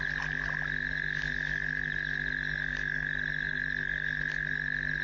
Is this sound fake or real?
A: real